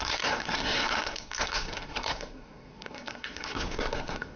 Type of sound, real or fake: fake